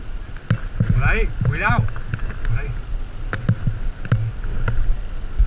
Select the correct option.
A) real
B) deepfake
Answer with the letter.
A